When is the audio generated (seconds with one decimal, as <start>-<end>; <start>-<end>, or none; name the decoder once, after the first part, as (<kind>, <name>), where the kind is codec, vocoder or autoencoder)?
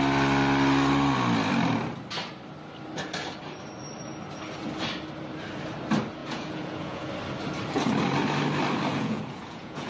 6.2-7.1 (vocoder, Vocos); 8.9-9.9